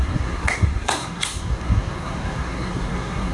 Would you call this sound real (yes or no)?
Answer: no